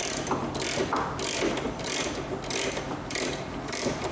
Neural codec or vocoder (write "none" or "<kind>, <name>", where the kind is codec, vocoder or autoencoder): none